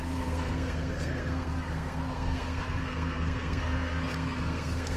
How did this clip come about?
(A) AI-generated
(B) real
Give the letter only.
A